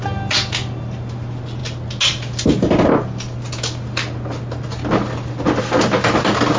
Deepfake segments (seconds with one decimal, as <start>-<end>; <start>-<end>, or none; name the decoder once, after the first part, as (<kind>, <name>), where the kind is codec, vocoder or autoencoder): none